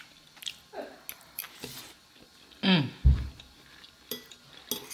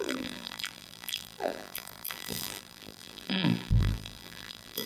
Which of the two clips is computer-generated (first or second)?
second